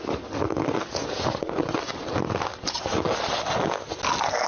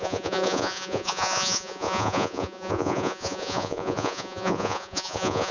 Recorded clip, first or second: first